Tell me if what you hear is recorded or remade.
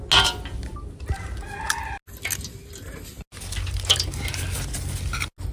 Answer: recorded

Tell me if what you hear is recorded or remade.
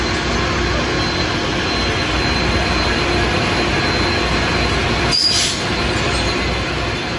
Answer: recorded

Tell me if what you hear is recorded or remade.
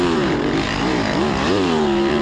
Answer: remade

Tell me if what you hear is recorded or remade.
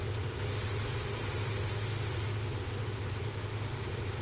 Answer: recorded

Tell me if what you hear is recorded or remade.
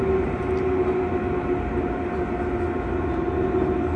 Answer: recorded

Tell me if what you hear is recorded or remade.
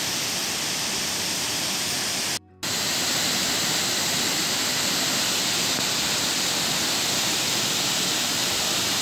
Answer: recorded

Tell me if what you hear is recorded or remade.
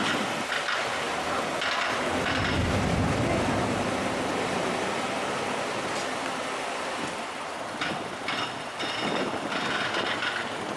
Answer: remade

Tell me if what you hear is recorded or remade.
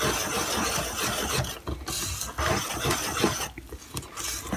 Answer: recorded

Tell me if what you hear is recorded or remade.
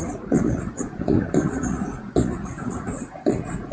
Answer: remade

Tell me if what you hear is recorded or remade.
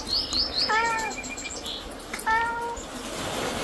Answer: recorded